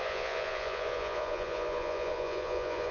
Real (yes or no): no